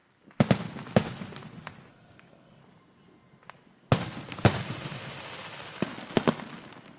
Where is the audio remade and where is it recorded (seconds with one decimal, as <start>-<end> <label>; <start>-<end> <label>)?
0.0-1.9 recorded; 1.9-2.6 remade; 2.6-7.0 recorded